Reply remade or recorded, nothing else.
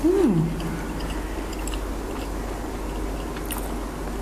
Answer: recorded